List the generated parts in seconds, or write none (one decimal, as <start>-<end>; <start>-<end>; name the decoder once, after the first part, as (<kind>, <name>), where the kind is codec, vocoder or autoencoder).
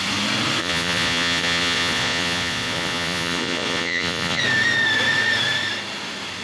0.6-4.4 (vocoder, Vocos)